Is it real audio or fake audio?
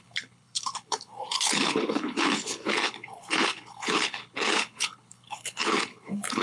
fake